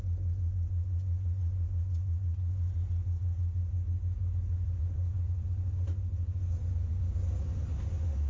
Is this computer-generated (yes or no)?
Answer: no